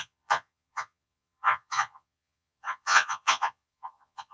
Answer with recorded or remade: remade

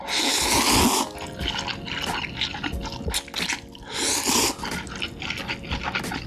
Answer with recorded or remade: recorded